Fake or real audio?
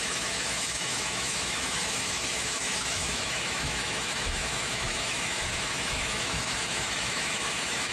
fake